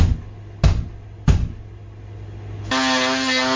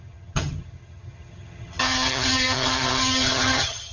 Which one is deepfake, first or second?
second